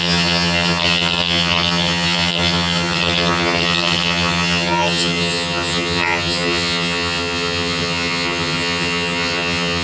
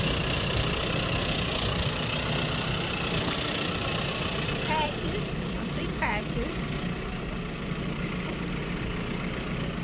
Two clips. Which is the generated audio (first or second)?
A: first